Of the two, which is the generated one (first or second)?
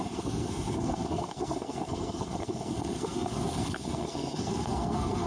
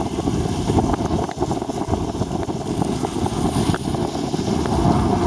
first